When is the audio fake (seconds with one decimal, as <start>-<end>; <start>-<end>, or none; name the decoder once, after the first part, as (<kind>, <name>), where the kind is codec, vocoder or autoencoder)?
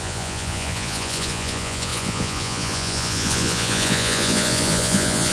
0.0-5.3 (vocoder, Vocos)